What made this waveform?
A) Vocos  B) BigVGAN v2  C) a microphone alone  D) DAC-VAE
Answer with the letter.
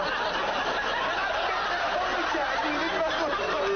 C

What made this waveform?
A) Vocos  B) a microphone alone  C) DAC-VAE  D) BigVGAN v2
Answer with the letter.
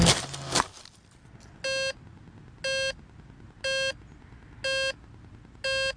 B